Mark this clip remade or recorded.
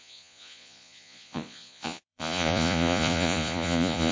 remade